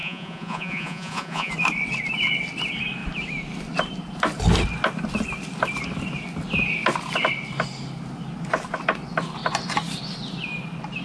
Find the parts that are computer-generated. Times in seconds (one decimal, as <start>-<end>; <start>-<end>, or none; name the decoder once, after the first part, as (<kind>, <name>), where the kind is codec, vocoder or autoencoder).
0.0-1.5 (vocoder, Vocos)